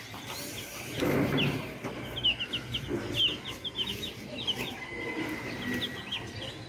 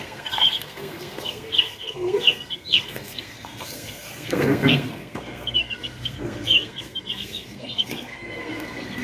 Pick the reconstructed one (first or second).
second